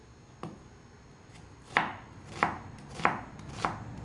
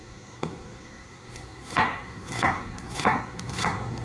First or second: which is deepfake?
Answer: second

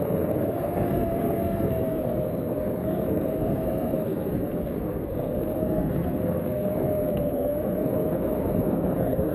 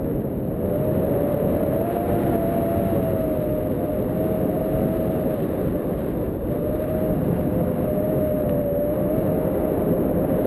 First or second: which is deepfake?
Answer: first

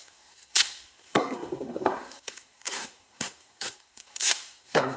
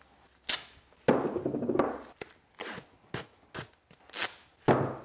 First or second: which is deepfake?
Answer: first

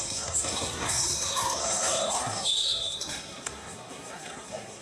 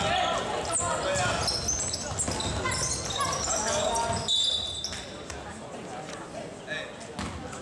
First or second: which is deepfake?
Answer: first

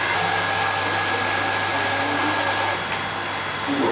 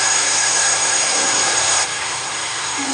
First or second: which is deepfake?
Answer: second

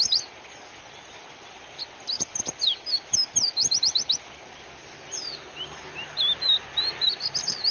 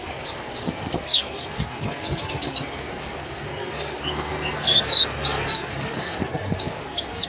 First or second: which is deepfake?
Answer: second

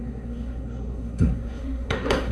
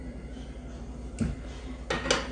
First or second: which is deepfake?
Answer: first